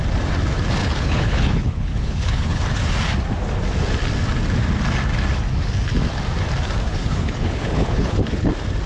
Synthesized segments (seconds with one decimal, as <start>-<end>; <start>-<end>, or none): 0.8-2.6; 6.9-8.5